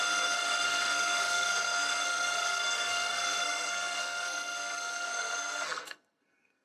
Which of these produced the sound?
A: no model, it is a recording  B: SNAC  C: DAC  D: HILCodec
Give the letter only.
B